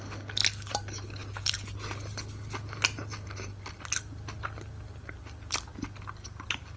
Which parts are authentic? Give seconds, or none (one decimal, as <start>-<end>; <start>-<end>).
0.0-6.8